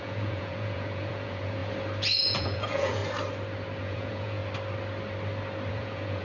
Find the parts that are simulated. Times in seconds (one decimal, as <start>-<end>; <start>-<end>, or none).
0.0-1.6; 2.2-3.0; 3.8-4.4; 5.7-6.2